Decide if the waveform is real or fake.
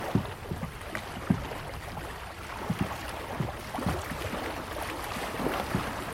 real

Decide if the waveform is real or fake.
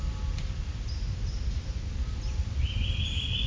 real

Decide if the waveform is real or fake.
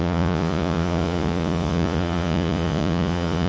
fake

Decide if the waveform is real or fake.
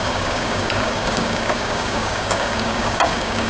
fake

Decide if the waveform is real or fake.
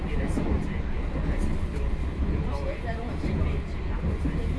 real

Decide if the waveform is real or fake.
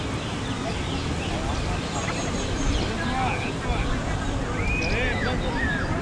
real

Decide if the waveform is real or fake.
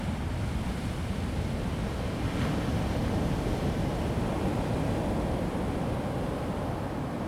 real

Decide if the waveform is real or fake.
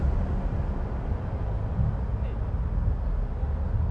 real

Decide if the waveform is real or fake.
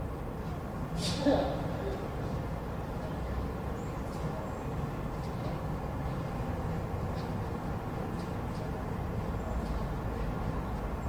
real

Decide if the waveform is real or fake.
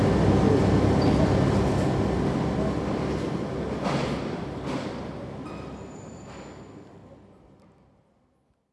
real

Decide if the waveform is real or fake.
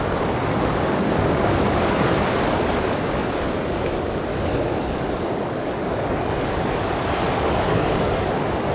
fake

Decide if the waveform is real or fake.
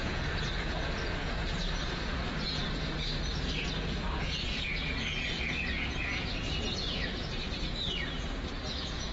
fake